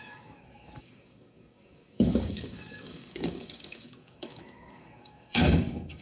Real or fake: fake